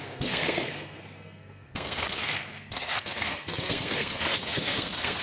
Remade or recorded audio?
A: remade